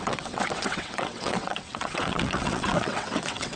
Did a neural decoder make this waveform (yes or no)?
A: yes